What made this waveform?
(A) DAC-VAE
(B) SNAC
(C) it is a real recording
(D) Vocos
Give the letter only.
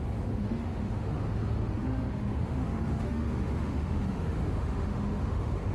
A